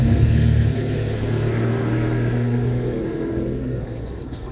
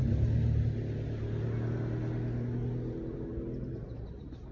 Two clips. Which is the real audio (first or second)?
second